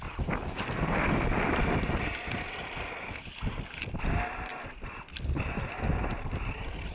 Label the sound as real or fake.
real